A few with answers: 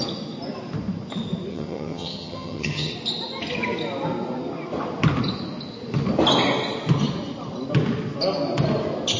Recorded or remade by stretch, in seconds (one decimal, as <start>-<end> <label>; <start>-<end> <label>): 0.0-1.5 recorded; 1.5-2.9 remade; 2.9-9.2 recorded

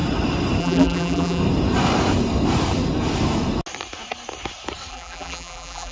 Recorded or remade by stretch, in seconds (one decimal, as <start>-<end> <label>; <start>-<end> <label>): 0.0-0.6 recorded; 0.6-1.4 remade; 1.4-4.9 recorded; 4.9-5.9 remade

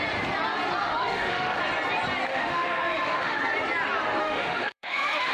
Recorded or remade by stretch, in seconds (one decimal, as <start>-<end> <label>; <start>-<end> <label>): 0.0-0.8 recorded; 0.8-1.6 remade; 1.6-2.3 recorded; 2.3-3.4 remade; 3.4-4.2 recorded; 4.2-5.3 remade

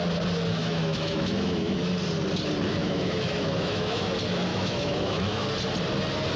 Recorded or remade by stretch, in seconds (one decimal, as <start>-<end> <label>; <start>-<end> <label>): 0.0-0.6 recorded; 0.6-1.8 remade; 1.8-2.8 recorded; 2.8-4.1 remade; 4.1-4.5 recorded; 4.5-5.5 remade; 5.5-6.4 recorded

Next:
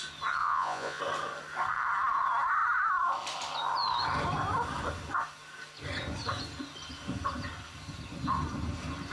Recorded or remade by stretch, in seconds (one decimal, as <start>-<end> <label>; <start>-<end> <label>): 0.0-0.4 recorded; 0.4-1.0 remade; 1.0-9.1 recorded

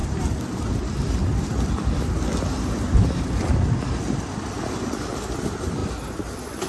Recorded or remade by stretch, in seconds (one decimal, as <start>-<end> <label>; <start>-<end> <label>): 0.0-6.7 recorded

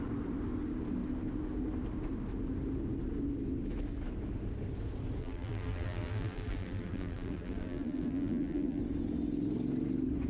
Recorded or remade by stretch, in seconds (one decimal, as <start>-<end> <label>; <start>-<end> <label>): 0.0-5.2 recorded; 5.2-8.8 remade; 8.8-10.3 recorded